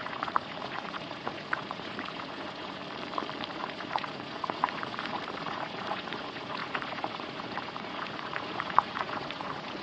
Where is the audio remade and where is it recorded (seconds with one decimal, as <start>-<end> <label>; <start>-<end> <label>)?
0.0-2.8 remade; 2.8-3.5 recorded; 3.5-9.8 remade